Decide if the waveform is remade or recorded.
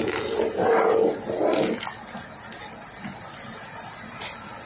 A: recorded